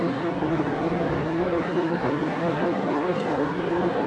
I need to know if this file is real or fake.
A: fake